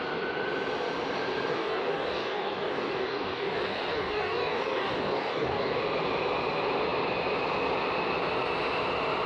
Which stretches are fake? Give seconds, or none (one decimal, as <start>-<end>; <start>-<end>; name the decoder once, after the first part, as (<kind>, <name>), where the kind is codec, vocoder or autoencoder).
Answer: 1.5-5.8 (codec, DAC)